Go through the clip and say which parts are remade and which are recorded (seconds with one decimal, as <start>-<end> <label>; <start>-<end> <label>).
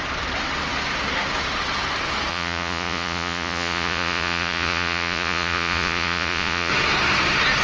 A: 0.0-2.3 recorded; 2.3-6.7 remade; 6.7-7.6 recorded